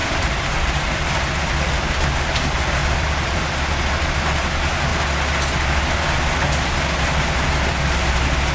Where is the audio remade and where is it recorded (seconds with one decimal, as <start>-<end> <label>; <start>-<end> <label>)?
0.0-1.8 remade; 1.8-2.8 recorded; 2.8-3.5 remade; 3.5-8.5 recorded